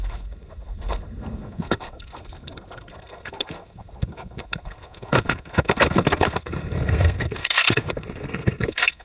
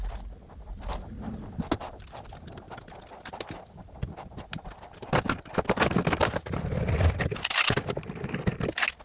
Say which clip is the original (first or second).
second